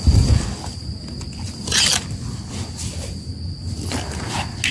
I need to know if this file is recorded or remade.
recorded